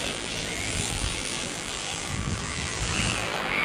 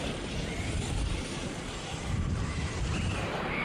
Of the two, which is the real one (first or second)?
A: second